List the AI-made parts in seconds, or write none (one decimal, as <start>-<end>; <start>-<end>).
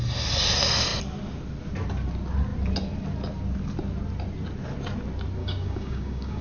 5.4-6.4